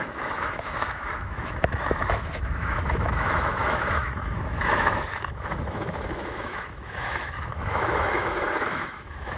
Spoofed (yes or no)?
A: yes